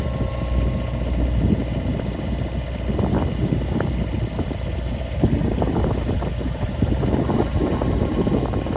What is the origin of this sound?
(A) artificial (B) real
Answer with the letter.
B